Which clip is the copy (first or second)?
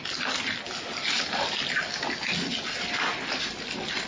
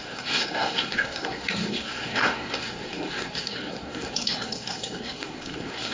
second